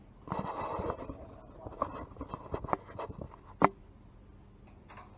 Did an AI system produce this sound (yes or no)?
no